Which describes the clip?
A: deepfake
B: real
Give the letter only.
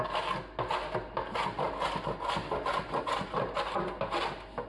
B